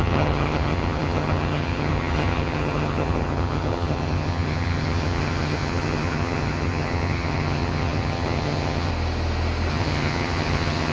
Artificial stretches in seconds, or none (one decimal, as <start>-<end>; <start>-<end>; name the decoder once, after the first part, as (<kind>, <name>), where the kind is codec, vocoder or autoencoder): 0.0-8.9 (vocoder, HiFi-GAN); 9.7-10.9